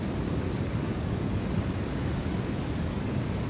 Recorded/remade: remade